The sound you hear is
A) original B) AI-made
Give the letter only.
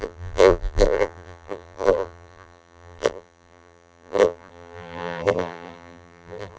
B